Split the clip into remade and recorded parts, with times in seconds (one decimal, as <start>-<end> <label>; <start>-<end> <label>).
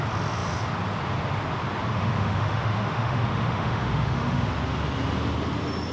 0.0-1.9 recorded; 1.9-4.5 remade; 4.5-5.9 recorded